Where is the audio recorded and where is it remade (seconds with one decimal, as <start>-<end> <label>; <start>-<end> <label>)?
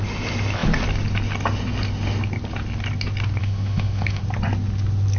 0.0-3.4 recorded; 3.4-4.2 remade; 4.2-5.2 recorded